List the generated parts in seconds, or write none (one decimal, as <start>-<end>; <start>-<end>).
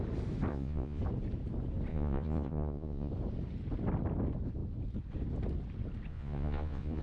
0.5-1.0; 1.9-3.1; 6.1-7.0